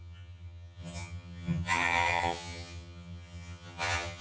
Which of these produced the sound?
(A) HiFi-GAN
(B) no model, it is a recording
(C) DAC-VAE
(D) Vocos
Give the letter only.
A